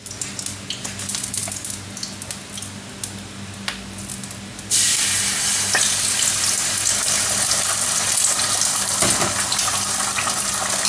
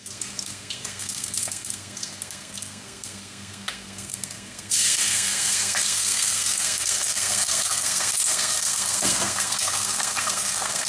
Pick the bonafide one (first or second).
first